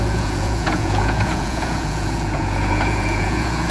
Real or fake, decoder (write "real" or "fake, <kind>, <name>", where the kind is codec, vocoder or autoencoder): fake, vocoder, Vocos